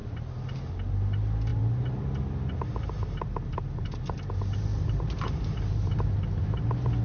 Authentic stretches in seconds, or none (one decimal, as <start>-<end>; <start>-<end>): 0.7-1.5; 2.0-4.7; 6.2-7.0